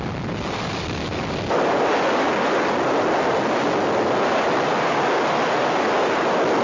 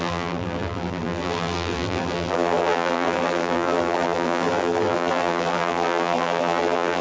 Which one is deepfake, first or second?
second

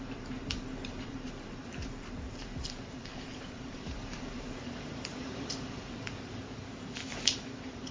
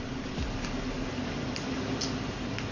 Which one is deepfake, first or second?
first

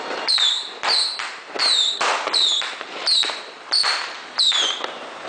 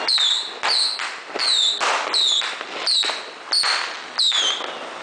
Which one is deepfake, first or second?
first